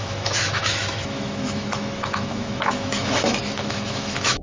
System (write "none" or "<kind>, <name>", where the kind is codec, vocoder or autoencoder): autoencoder, DAC-VAE